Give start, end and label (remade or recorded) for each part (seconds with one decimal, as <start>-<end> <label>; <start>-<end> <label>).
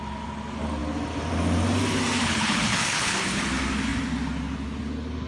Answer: 0.0-2.2 recorded; 2.2-3.4 remade; 3.4-5.3 recorded